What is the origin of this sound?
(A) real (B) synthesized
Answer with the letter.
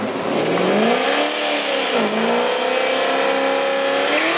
A